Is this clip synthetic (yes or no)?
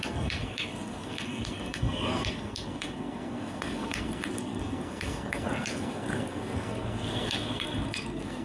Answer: yes